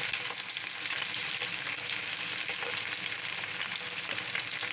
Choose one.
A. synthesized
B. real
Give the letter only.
B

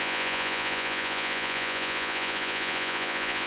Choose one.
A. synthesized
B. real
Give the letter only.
A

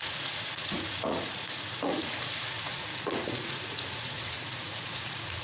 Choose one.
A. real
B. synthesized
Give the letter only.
B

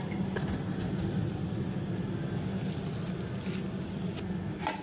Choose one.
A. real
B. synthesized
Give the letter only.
A